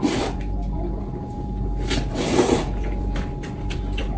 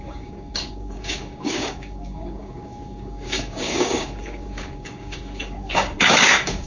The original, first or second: first